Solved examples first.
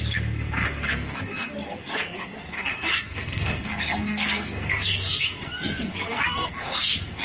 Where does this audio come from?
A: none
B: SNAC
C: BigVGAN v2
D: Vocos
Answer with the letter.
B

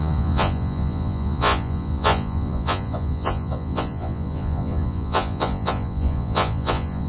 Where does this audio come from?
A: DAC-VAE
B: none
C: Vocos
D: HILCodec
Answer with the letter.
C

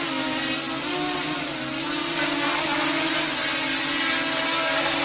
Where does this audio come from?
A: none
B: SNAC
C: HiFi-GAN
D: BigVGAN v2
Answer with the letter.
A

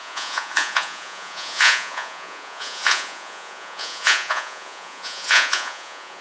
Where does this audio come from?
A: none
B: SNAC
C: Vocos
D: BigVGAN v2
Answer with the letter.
C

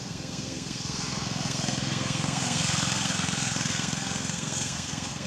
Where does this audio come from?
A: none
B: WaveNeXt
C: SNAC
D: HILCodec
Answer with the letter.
C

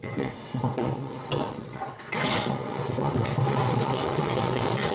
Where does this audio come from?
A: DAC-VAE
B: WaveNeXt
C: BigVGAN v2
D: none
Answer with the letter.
B